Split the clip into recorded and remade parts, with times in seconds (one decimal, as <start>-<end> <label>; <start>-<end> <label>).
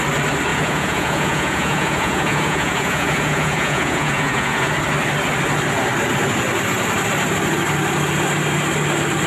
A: 0.0-0.5 recorded; 0.5-4.7 remade; 4.7-9.3 recorded